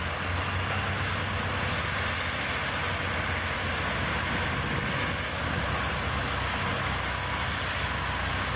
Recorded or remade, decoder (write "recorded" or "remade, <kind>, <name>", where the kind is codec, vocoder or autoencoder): recorded